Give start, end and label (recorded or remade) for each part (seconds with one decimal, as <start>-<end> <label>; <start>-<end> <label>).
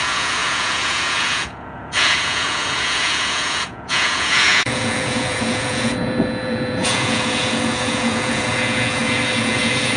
0.0-10.0 remade